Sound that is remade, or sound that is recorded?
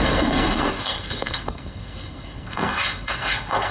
remade